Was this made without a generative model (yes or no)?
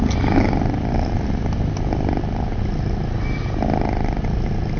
yes